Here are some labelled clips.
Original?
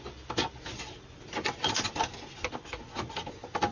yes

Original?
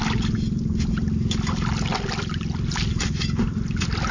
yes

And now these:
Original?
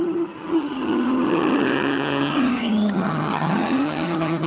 no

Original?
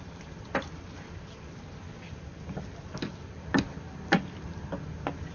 yes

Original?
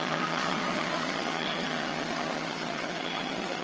no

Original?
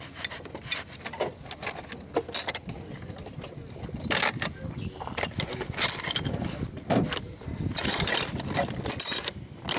yes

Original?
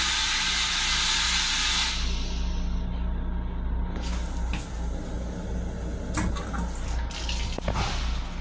yes